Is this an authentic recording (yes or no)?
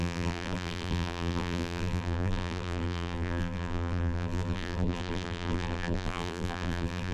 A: no